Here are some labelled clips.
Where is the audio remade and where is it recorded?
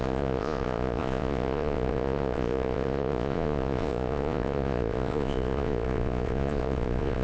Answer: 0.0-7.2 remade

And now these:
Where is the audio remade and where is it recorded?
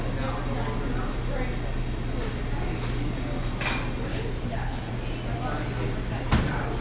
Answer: 0.0-4.1 recorded; 4.1-4.9 remade; 4.9-6.8 recorded